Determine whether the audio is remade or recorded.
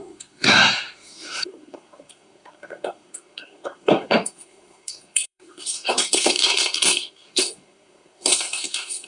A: remade